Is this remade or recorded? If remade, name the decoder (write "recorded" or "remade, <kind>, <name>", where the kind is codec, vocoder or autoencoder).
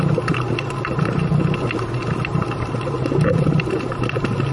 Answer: recorded